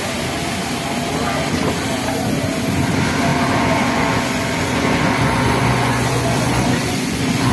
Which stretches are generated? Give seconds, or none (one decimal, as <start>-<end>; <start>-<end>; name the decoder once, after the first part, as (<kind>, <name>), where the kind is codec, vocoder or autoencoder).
3.3-7.5 (vocoder, Vocos)